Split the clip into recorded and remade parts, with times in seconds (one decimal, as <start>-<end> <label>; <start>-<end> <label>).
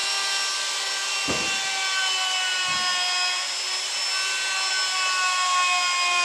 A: 0.0-6.2 recorded